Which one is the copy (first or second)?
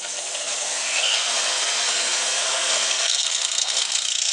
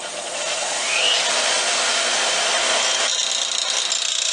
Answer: first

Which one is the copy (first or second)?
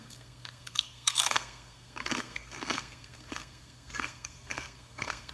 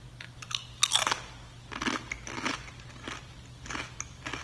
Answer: first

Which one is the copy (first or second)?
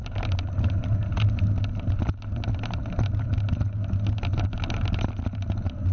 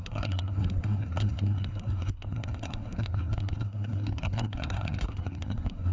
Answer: second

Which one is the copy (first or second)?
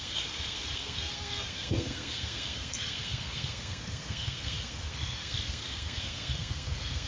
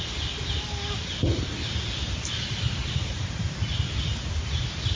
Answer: first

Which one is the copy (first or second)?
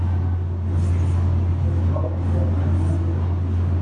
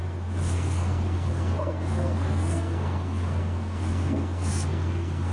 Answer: second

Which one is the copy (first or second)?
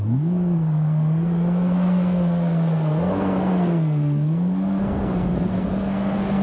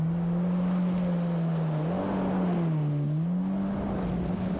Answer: first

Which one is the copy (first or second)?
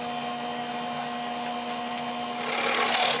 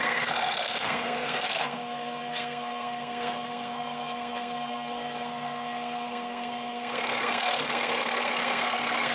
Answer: second